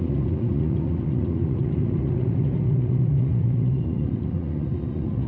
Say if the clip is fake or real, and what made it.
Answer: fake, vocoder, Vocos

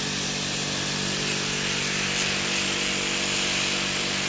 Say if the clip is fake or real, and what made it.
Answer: real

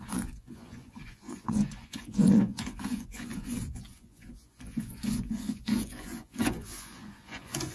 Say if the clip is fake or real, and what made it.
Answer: fake, vocoder, Vocos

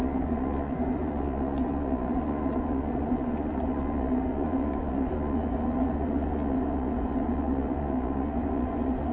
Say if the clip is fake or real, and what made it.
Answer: fake, vocoder, Vocos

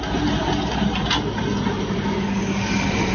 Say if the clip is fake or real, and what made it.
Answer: real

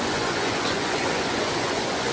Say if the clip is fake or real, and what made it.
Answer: fake, vocoder, Vocos